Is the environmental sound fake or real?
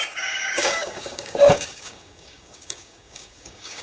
fake